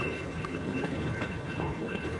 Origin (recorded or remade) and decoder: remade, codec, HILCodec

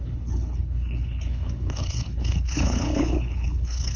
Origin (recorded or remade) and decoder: remade, codec, HILCodec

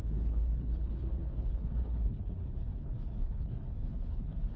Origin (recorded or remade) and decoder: remade, codec, HILCodec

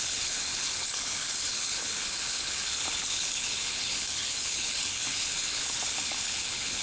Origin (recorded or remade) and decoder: remade, codec, HILCodec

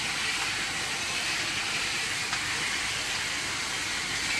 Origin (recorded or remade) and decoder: recorded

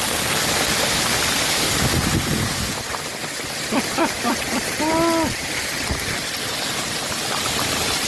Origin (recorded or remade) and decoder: recorded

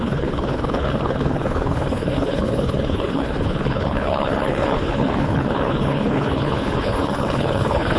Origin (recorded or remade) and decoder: remade, codec, HILCodec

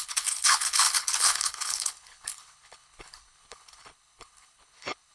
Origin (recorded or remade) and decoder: remade, codec, HILCodec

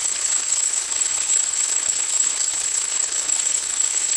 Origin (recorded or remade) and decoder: remade, codec, HILCodec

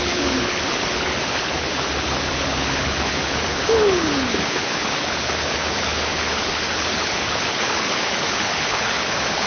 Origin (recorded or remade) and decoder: remade, codec, HILCodec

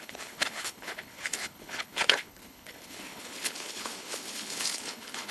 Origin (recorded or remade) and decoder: remade, codec, HILCodec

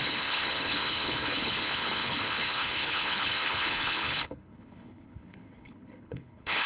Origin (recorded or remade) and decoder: remade, codec, HILCodec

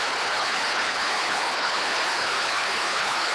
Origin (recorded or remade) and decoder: remade, codec, HILCodec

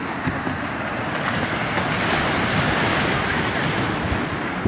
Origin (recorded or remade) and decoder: recorded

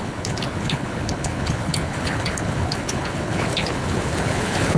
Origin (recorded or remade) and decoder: remade, codec, HILCodec